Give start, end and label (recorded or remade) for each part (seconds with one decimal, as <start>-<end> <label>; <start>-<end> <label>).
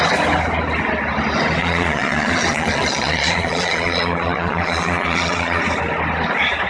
0.0-1.6 recorded; 1.6-5.6 remade; 5.6-6.7 recorded